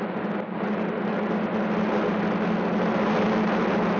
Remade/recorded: recorded